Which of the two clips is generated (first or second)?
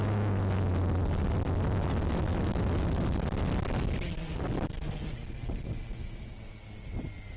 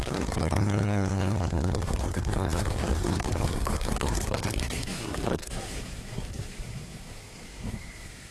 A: second